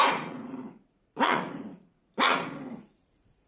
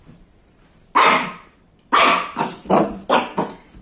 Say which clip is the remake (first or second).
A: first